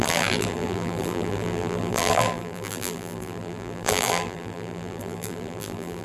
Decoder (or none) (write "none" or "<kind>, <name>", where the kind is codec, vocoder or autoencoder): vocoder, BigVGAN v2